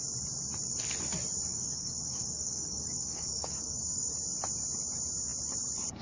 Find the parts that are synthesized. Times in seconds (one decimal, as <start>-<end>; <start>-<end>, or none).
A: 1.5-4.1